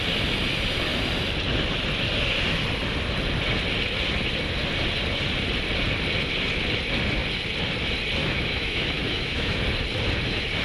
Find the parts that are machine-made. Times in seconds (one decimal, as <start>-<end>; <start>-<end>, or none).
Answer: 8.2-9.6